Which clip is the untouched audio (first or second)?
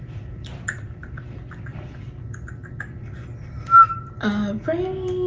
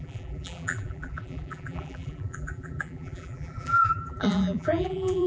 first